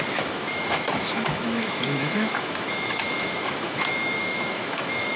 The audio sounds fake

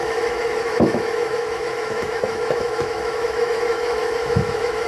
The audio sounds fake